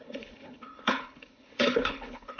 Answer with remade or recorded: remade